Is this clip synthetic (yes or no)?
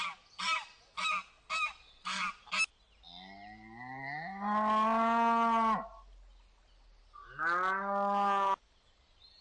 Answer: no